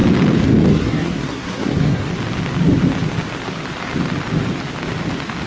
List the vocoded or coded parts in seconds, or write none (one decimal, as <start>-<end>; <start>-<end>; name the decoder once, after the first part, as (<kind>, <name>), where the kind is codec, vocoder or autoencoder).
0.7-2.1 (codec, SNAC)